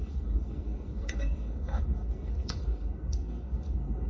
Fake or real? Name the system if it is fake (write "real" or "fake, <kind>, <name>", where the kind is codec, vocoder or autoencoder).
fake, codec, SNAC